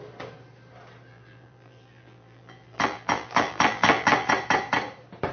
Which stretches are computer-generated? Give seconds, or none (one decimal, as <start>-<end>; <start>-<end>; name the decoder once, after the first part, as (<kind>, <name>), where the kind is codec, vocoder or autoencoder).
1.1-4.3 (vocoder, BigVGAN v2)